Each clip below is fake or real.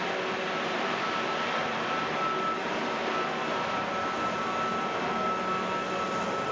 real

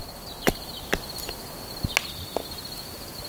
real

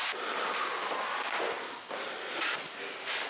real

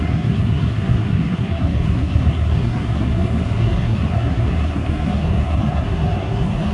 fake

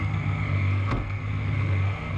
fake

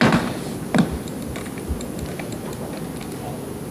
real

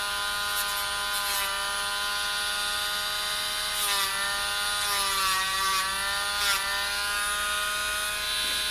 real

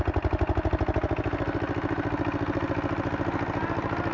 real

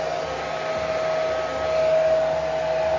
real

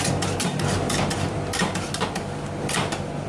real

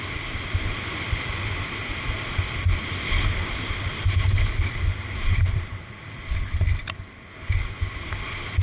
real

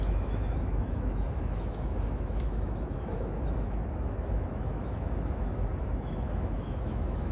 fake